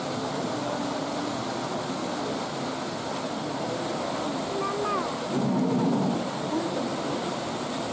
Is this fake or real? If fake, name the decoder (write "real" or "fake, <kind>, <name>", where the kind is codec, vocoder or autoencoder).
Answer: real